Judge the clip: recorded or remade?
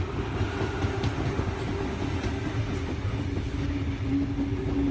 recorded